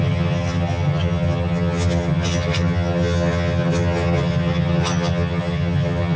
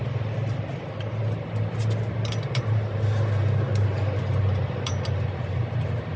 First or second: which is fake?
first